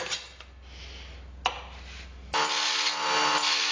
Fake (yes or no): no